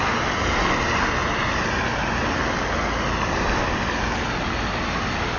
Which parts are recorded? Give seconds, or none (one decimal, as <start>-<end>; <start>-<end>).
0.0-5.4